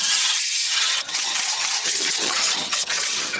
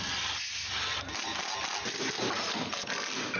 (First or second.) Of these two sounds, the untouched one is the second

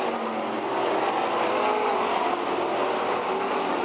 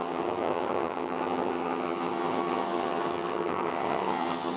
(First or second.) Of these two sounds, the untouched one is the first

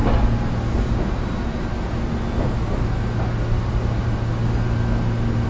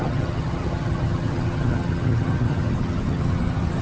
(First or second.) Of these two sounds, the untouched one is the first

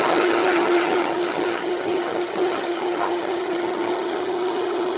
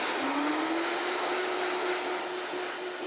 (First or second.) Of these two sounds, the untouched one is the second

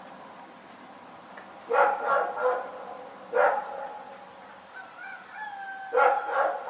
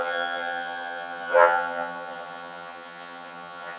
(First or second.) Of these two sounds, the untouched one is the first